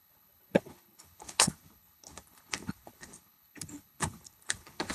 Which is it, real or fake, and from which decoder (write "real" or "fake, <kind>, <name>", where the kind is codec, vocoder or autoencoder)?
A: fake, codec, HILCodec